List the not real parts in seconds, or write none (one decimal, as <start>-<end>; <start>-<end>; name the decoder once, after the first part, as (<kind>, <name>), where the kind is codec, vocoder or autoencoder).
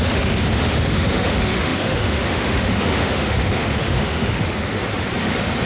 0.0-4.8 (autoencoder, DAC-VAE)